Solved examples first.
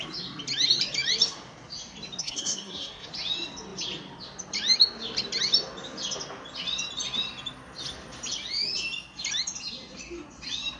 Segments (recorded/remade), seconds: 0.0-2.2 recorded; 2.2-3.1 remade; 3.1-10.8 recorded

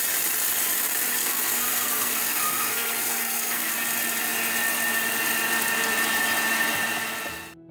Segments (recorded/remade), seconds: 0.0-1.2 recorded; 1.2-3.7 remade; 3.7-7.7 recorded

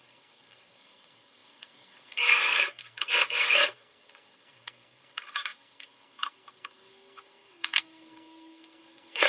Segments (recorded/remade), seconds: 0.0-9.3 remade

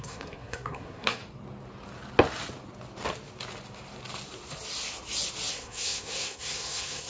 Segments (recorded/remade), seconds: 0.0-1.2 remade; 1.2-5.5 recorded; 5.5-7.1 remade

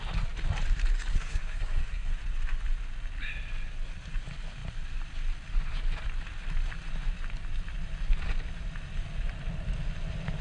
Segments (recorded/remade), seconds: 0.0-1.1 recorded; 1.1-2.2 remade; 2.2-10.4 recorded

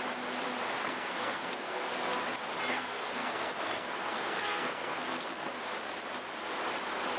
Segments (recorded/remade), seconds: 0.0-0.8 recorded; 0.8-1.9 remade; 1.9-2.7 recorded; 2.7-5.5 remade; 5.5-7.2 recorded

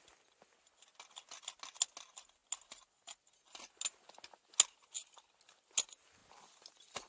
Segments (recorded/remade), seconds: 0.0-7.1 recorded